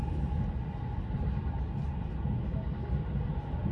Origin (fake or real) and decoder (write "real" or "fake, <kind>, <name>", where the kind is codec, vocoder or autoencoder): real